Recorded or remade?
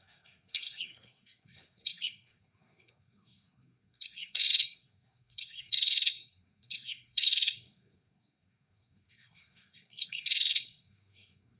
remade